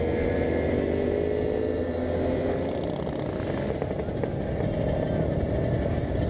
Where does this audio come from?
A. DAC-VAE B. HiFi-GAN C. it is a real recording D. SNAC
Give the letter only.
C